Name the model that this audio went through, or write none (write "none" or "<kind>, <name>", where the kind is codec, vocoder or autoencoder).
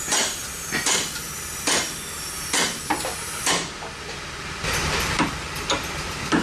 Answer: vocoder, BigVGAN v2